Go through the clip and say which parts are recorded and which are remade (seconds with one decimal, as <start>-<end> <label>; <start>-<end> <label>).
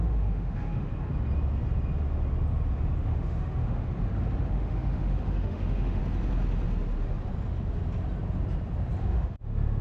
0.0-0.9 remade; 0.9-3.0 recorded; 3.0-3.9 remade; 3.9-4.5 recorded; 4.5-6.0 remade; 6.0-9.0 recorded; 9.0-9.8 remade